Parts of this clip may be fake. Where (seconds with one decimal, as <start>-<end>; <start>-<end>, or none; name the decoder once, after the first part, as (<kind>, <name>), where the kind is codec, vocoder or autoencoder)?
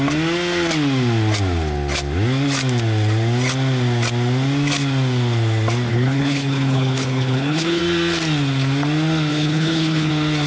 5.9-7.8 (codec, HILCodec); 9.3-10.1